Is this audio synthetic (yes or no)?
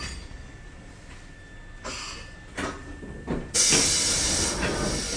no